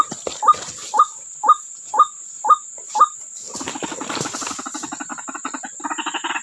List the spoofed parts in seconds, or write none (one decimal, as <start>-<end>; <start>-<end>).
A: 0.8-4.6; 5.1-6.4